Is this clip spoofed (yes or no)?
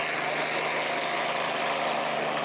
no